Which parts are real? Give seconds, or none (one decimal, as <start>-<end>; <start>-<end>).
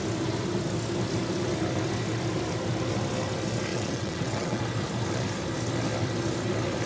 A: 0.0-3.7; 4.6-6.9